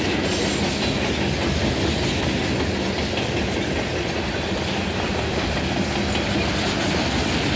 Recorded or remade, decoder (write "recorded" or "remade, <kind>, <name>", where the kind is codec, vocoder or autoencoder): recorded